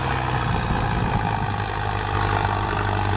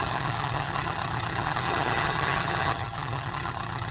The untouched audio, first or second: first